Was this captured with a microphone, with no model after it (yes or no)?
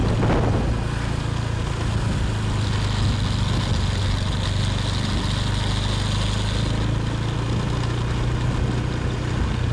yes